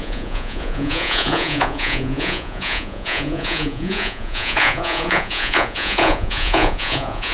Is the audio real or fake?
fake